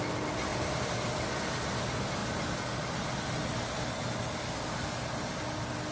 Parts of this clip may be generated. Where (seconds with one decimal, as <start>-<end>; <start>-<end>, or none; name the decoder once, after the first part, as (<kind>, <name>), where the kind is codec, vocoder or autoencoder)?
0.5-1.2 (vocoder, BigVGAN v2)